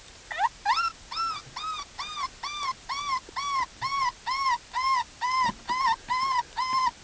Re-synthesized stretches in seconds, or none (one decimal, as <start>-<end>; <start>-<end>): none